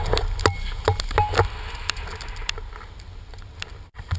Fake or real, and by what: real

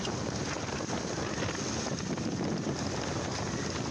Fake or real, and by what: real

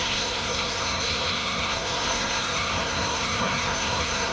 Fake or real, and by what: fake, codec, SNAC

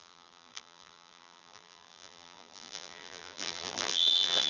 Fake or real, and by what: fake, vocoder, BigVGAN v2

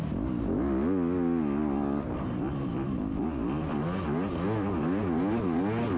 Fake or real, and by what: real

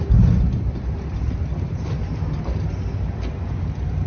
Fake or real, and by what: real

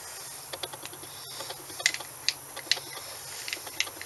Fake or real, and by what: real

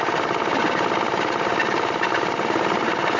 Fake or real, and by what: real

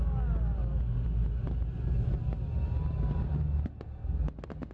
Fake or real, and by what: real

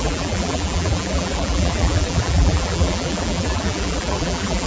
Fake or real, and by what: fake, vocoder, BigVGAN v2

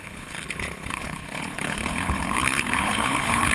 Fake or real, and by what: fake, codec, HILCodec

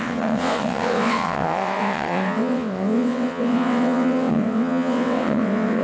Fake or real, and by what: fake, vocoder, WaveNeXt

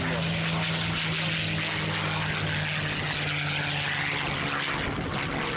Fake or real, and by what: real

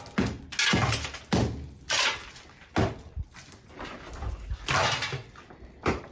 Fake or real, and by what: real